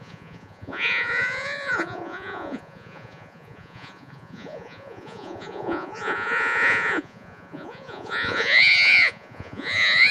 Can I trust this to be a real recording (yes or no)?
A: no